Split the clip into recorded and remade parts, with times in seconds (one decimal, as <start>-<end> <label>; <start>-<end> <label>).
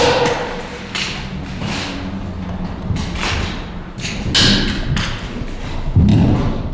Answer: 0.0-6.7 recorded